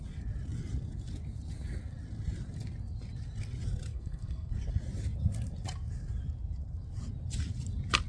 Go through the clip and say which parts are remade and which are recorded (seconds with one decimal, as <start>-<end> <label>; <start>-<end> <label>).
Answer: 0.0-3.9 recorded; 3.9-4.5 remade; 4.5-8.1 recorded